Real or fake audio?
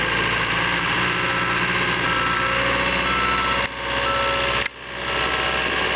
real